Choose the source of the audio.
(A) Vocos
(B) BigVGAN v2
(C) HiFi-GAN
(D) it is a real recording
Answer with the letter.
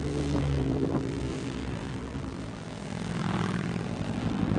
B